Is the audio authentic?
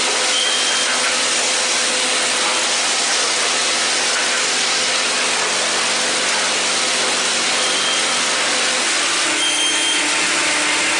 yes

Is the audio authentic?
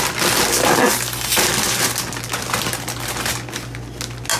yes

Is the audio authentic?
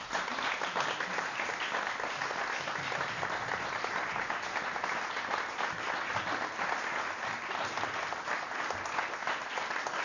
yes